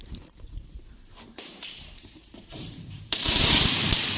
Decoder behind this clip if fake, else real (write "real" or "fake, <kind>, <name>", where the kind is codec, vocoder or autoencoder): fake, vocoder, BigVGAN v2